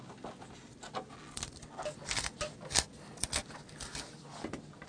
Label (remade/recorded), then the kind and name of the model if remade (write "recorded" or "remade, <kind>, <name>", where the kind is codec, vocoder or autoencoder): recorded